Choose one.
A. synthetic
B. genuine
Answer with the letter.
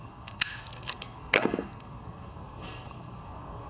A